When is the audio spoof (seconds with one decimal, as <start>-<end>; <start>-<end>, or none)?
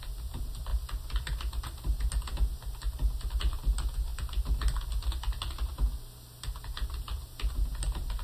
none